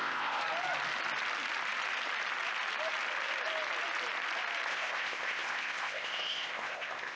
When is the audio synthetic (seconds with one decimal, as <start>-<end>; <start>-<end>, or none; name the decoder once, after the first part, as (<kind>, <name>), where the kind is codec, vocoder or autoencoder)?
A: 0.0-0.4 (codec, ZipCodec); 4.7-7.2